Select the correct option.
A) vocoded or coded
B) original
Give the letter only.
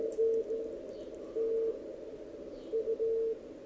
B